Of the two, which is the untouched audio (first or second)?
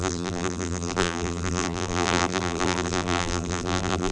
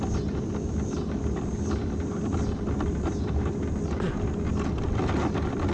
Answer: second